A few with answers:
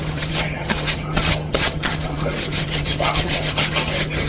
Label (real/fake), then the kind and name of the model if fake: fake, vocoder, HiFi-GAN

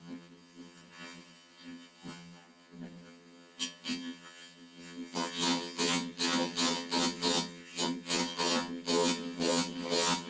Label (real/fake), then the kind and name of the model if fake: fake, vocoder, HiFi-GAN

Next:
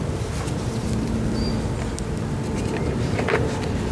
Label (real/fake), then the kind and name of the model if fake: real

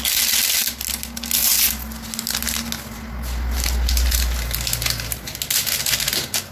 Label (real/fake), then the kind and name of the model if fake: real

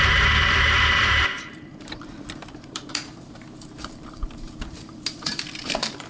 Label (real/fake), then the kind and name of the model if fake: fake, vocoder, BigVGAN v2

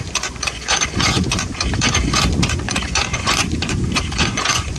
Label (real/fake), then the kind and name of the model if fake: fake, vocoder, Vocos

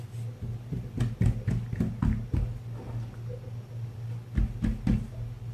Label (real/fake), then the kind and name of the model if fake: real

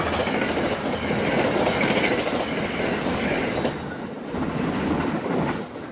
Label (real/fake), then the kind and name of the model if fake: real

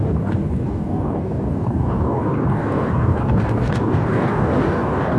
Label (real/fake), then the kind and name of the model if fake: fake, codec, DAC